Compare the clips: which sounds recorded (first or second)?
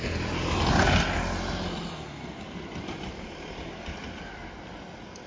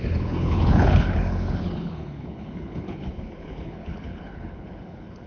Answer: first